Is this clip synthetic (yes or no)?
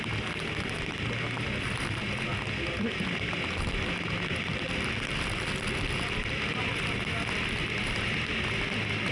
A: no